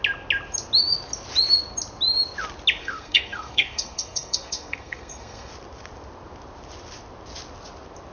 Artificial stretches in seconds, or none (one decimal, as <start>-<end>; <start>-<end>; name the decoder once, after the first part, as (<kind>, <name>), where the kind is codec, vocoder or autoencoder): 2.8-5.5 (codec, SNAC)